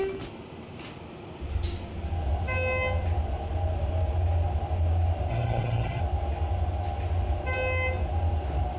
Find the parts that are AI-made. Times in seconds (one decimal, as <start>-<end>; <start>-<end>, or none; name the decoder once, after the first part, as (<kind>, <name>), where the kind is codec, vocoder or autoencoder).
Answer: 5.3-6.0 (vocoder, HiFi-GAN)